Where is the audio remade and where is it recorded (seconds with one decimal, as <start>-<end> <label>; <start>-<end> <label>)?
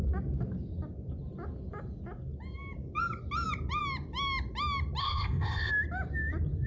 0.0-5.0 recorded; 5.0-5.7 remade; 5.7-6.7 recorded